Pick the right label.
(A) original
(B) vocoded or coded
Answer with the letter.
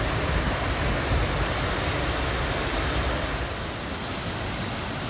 A